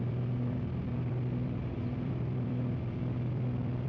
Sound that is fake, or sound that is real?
fake